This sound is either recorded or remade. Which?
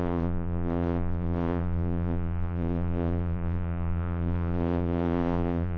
remade